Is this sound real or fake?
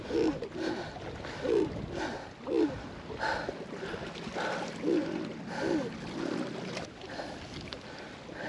real